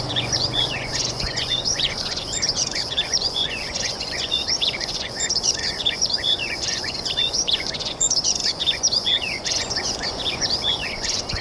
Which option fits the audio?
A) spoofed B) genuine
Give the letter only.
A